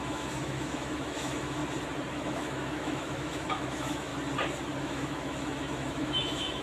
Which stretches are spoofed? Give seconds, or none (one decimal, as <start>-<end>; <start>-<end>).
0.0-1.6; 2.1-4.1; 4.8-6.6